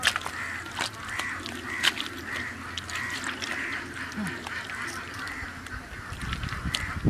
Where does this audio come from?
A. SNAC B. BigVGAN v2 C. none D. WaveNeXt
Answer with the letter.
C